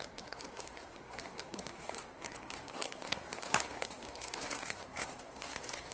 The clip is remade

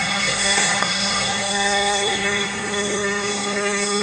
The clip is remade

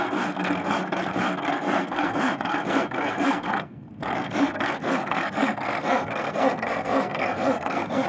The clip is remade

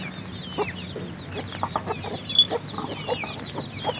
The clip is recorded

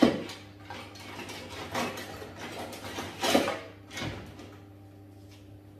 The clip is recorded